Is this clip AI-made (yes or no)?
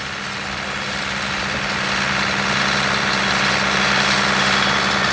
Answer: no